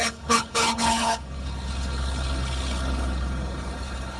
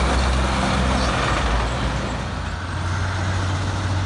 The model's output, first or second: first